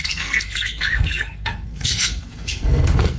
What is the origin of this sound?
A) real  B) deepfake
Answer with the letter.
B